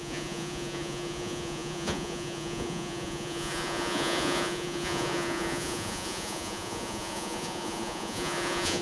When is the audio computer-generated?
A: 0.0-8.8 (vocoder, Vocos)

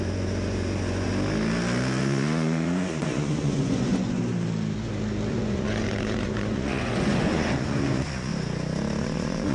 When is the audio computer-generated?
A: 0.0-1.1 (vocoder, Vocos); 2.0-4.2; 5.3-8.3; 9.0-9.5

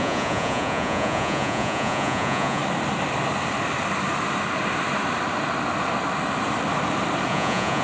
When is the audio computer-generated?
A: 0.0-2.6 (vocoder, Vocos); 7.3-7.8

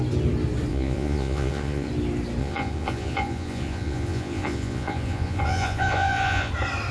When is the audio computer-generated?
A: 0.7-1.9 (vocoder, Vocos); 2.4-6.5

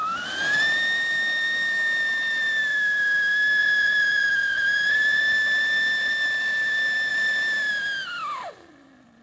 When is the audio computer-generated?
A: 3.6-5.2 (vocoder, Vocos)